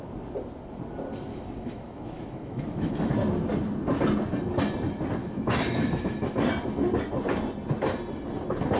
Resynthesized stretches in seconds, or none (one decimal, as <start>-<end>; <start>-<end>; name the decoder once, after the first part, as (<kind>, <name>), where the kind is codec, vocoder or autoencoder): 1.3-3.1 (autoencoder, DAC-VAE); 5.2-6.4